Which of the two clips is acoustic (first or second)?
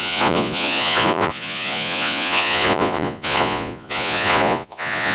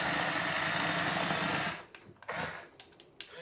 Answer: second